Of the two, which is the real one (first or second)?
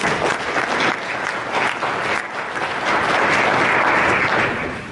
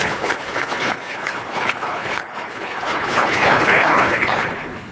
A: first